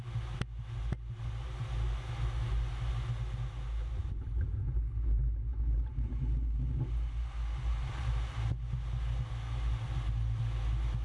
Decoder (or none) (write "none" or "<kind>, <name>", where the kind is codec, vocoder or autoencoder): none